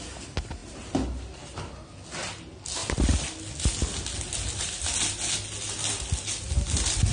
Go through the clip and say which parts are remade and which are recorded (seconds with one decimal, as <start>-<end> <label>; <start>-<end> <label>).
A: 0.0-7.1 recorded